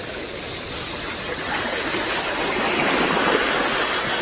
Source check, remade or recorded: recorded